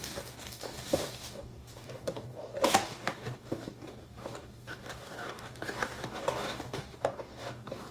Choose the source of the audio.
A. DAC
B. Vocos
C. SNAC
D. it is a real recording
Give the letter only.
A